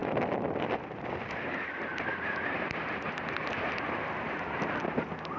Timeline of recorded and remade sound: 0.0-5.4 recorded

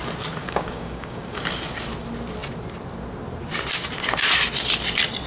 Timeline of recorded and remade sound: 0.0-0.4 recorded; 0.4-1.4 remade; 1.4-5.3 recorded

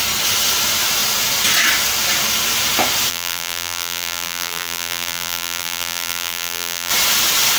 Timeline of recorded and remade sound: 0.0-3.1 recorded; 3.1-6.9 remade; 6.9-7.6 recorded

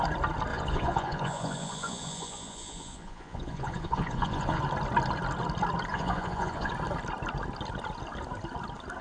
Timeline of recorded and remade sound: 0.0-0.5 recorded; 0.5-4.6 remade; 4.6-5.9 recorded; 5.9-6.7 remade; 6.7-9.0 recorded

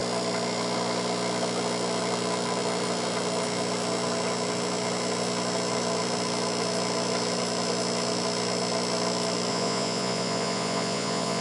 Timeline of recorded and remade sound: 0.0-9.5 recorded; 9.5-11.4 remade